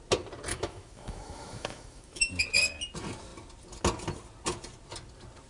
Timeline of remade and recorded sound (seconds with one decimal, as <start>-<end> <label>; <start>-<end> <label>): 0.0-0.5 recorded; 0.5-2.3 remade; 2.3-5.5 recorded